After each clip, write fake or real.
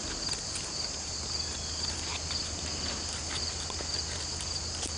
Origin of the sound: real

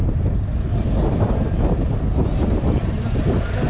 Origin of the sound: real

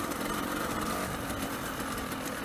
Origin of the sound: real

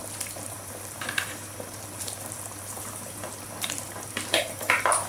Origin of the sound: fake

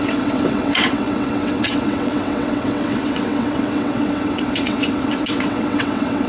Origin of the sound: fake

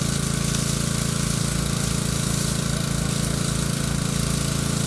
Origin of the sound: real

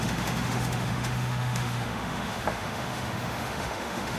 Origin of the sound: fake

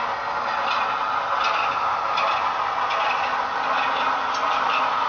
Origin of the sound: real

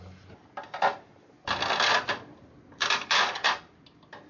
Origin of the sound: real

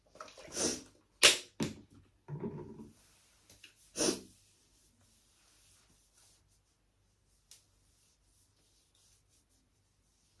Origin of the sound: real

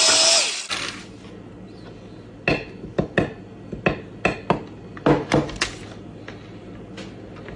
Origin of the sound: real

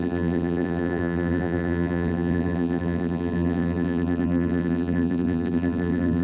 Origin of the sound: fake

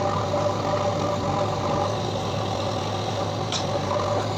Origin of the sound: real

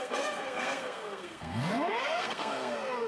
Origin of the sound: fake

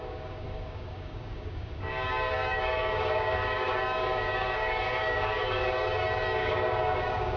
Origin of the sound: fake